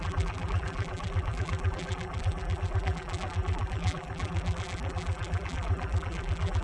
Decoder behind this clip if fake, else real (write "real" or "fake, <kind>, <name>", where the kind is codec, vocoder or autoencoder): fake, vocoder, BigVGAN v2